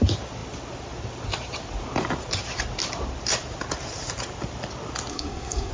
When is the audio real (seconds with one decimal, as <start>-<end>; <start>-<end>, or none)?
0.0-5.1